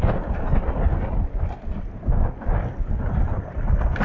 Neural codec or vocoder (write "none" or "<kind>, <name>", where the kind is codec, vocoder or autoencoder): none